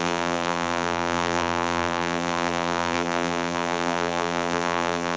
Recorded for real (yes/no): no